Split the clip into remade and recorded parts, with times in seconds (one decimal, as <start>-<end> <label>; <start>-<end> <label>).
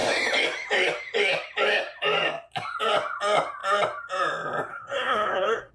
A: 0.0-4.7 recorded; 4.7-5.7 remade